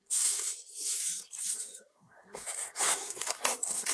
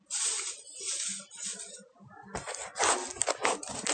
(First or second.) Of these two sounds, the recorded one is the second